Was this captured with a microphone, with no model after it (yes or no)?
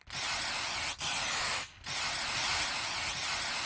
yes